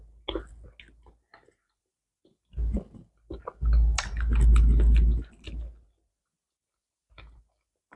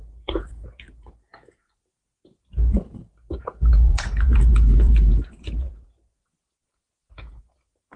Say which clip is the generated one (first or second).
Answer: second